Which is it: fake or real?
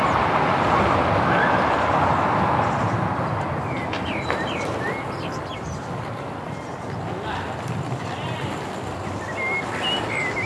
real